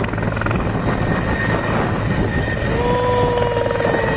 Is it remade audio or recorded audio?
recorded